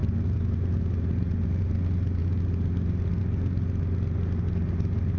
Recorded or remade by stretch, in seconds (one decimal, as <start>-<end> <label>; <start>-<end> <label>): 0.0-5.2 recorded